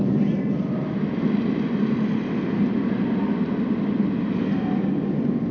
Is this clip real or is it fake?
real